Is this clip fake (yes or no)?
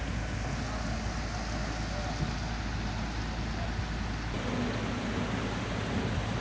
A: no